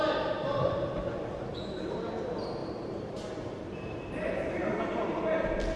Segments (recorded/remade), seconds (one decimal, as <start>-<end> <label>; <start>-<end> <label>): 0.0-1.5 recorded; 1.5-2.0 remade; 2.0-2.6 recorded; 2.6-4.8 remade; 4.8-5.8 recorded